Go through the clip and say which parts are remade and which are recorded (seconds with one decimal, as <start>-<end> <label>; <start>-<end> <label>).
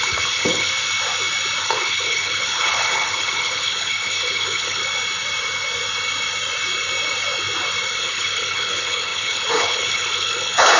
0.0-0.7 remade; 0.7-1.6 recorded; 1.6-4.8 remade; 4.8-8.0 recorded; 8.0-10.8 remade